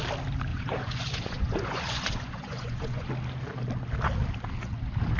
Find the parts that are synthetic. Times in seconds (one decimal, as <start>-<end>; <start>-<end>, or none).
0.5-3.1

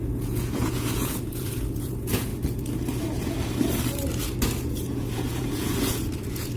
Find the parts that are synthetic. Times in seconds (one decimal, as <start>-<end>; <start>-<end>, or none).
0.0-2.3; 4.6-6.6

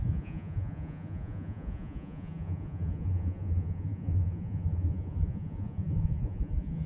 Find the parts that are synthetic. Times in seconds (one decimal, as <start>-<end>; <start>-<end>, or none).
0.0-6.9

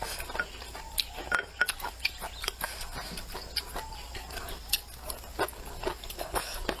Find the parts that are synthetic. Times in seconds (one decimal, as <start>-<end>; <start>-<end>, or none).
none